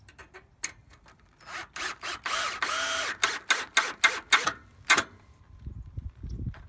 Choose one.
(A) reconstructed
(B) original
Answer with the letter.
B